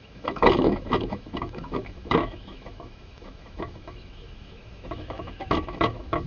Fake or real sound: fake